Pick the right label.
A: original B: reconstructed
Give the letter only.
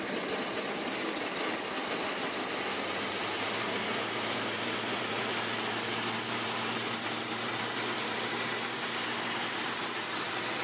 B